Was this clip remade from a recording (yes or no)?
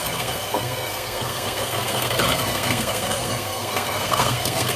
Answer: yes